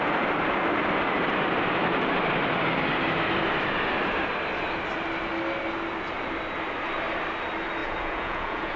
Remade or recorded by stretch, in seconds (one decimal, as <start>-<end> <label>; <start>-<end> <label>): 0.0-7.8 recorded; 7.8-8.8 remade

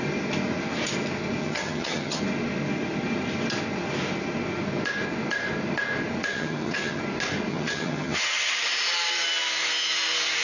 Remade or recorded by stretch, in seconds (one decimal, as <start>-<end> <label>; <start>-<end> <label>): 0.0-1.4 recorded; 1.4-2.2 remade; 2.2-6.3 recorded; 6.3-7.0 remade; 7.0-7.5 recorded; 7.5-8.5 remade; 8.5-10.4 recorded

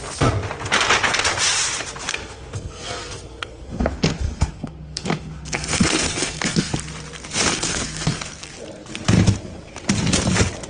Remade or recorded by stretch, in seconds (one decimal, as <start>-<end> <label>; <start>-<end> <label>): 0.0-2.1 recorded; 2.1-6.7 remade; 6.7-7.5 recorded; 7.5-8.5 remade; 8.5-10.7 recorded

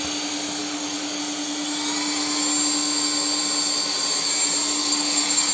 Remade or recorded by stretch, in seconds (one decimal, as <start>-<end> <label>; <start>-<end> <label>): 0.0-0.6 recorded; 0.6-1.2 remade; 1.2-4.8 recorded; 4.8-5.5 remade